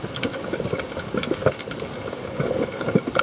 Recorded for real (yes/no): no